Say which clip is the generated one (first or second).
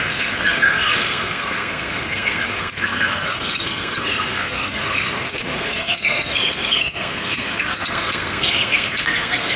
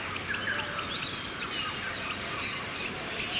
first